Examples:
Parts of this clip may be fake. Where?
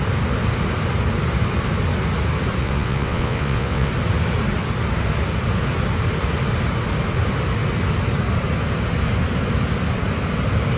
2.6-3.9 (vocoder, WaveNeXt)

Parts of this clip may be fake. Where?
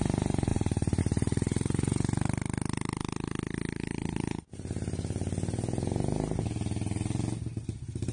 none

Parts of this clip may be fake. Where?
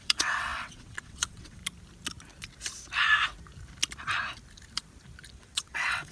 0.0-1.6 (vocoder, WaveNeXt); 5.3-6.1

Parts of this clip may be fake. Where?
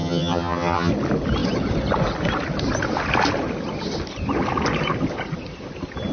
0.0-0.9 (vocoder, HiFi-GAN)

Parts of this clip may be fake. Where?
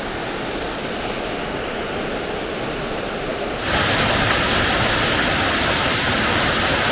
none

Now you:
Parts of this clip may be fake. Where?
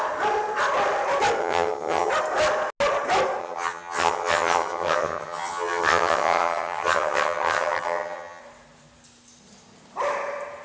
1.4-2.1 (vocoder, HiFi-GAN); 3.4-8.4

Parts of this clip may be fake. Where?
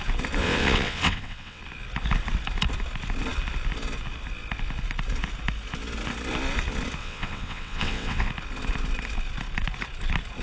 0.4-1.6 (vocoder, WaveNeXt); 7.0-8.3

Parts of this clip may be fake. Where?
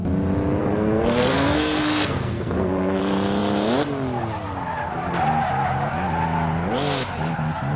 0.6-3.0 (codec, SNAC)